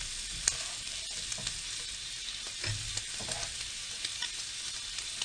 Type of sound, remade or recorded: recorded